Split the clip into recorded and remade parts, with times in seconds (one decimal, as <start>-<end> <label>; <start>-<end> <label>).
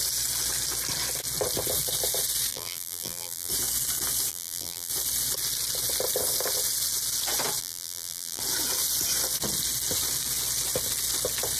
0.0-2.5 recorded; 2.5-3.5 remade; 3.5-4.3 recorded; 4.3-4.9 remade; 4.9-7.6 recorded; 7.6-8.4 remade; 8.4-11.6 recorded